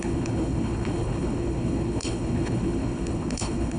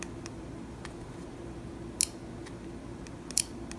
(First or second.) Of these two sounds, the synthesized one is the first